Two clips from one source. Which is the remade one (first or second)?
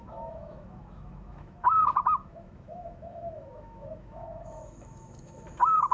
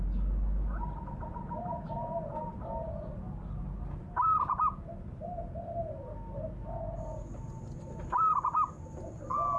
first